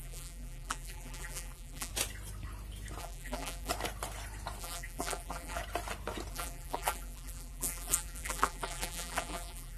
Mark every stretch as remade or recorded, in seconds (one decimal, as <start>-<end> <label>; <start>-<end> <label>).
0.0-1.9 remade; 1.9-3.0 recorded; 3.0-3.7 remade; 3.7-4.6 recorded; 4.6-5.6 remade; 5.6-6.3 recorded; 6.3-9.8 remade